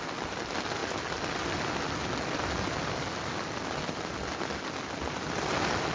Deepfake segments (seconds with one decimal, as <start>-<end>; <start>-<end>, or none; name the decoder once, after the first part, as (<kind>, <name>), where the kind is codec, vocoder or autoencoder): none